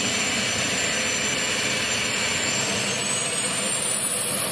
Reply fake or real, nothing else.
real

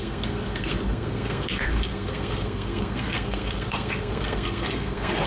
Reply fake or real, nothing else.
fake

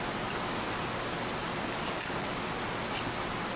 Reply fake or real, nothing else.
real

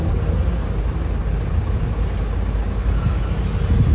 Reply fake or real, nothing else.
real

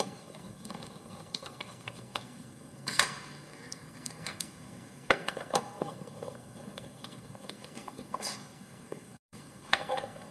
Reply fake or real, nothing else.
fake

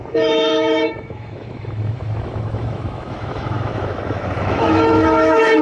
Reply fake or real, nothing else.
fake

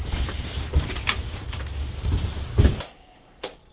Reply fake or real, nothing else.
real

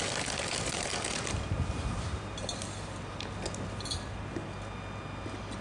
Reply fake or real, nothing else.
real